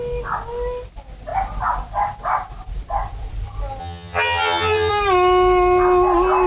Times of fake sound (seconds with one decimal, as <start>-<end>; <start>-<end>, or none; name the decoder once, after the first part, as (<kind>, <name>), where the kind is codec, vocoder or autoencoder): 3.8-4.9 (vocoder, HiFi-GAN)